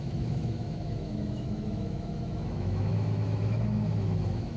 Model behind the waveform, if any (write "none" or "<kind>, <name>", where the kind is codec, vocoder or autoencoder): autoencoder, DAC-VAE